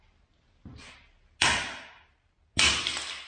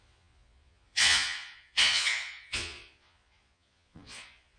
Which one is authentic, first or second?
first